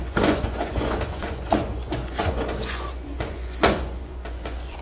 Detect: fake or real fake